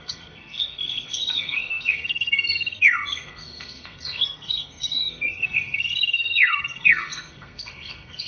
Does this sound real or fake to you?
fake